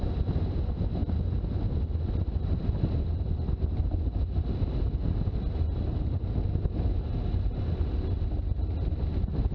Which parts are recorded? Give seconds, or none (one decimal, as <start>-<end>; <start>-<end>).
0.0-9.5